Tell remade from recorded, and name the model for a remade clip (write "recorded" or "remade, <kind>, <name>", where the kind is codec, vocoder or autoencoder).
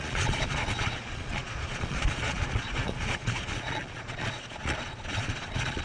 remade, vocoder, Vocos